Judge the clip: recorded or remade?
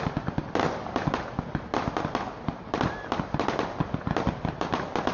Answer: recorded